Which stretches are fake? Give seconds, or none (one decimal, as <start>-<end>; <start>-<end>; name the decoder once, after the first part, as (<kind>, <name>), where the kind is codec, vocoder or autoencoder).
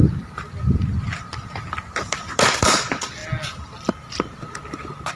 none